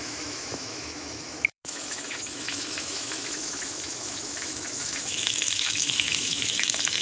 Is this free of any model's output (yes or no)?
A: no